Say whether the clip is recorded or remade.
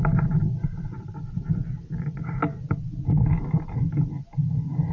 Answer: recorded